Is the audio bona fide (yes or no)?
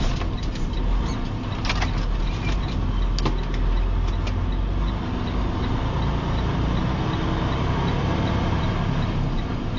yes